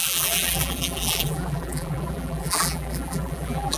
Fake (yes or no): yes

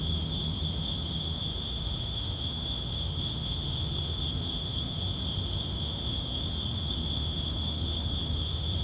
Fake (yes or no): yes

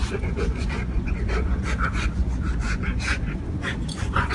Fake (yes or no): yes